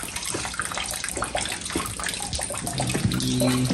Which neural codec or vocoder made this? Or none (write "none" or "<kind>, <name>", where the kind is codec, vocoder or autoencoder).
none